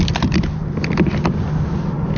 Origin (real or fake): fake